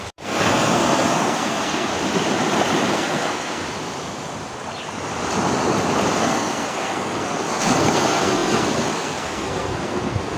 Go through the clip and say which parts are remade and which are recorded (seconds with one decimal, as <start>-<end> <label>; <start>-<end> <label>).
0.0-1.9 remade; 1.9-2.9 recorded; 2.9-3.6 remade; 3.6-6.2 recorded; 6.2-10.4 remade